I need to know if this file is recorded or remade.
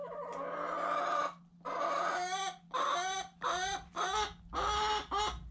recorded